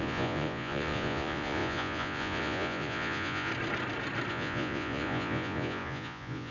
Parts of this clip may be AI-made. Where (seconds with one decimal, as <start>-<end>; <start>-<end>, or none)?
0.0-3.5; 4.3-6.5